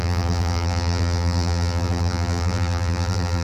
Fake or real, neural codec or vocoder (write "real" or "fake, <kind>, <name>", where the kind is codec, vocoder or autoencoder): fake, vocoder, BigVGAN v2